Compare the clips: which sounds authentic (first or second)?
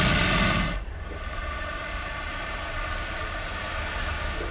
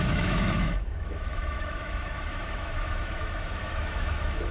first